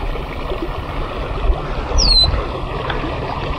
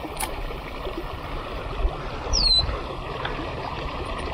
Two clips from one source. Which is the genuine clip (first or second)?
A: first